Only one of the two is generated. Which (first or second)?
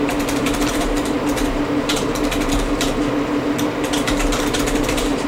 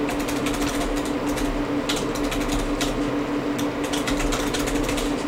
first